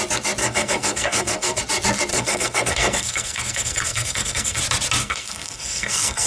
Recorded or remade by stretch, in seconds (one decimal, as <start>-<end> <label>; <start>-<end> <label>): 0.0-0.4 recorded; 0.4-1.6 remade; 1.6-2.1 recorded; 2.1-4.6 remade; 4.6-5.0 recorded; 5.0-6.3 remade